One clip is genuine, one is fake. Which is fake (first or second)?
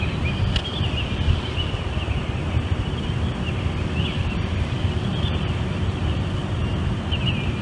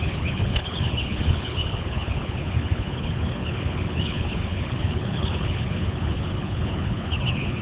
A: second